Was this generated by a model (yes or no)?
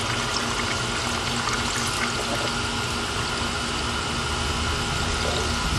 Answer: no